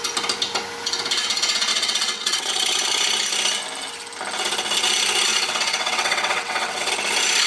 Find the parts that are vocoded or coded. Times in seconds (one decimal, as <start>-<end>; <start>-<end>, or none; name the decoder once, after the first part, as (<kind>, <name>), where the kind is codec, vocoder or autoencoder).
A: 1.7-2.5 (vocoder, WaveNeXt); 5.3-6.9